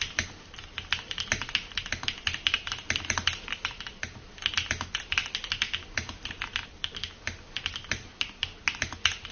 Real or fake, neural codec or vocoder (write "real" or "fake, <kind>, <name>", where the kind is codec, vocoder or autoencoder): real